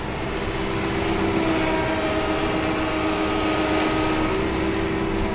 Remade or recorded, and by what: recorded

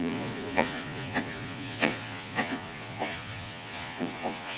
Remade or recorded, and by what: remade, vocoder, Vocos